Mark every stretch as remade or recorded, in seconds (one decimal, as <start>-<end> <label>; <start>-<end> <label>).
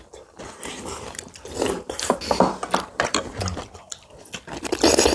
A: 0.0-5.1 recorded